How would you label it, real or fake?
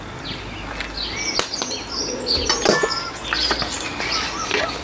real